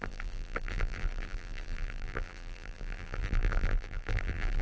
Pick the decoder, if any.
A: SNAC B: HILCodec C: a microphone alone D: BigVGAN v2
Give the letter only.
D